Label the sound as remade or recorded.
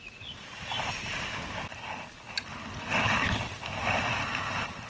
recorded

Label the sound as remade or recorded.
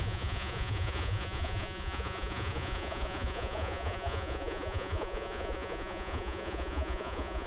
remade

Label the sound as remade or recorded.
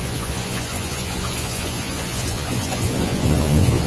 remade